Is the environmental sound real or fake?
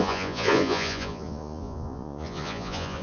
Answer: fake